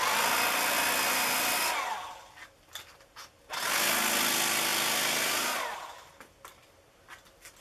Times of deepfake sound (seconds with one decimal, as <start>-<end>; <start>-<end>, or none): none